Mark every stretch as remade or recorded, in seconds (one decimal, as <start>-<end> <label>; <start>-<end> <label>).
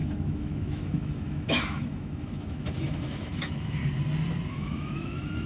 0.0-3.8 remade; 3.8-4.5 recorded; 4.5-5.5 remade